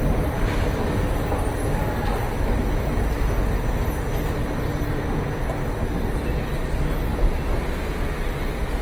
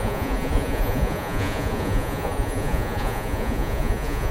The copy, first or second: second